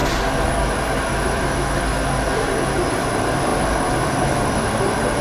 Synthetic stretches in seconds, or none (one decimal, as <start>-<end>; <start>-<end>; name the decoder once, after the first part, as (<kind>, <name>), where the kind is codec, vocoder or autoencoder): none